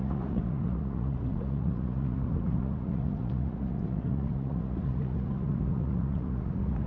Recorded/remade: remade